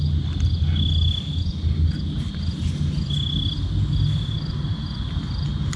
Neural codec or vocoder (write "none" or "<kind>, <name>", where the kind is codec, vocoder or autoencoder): none